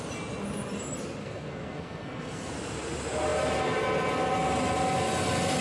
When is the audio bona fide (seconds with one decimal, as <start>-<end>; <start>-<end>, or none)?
0.0-1.2; 2.5-5.6